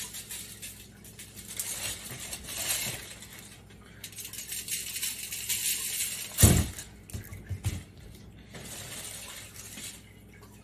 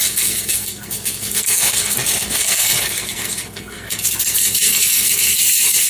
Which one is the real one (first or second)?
first